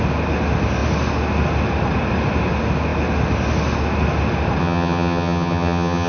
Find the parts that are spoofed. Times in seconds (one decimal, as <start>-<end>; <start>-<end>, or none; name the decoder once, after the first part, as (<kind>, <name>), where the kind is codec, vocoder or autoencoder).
4.6-6.1 (vocoder, HiFi-GAN)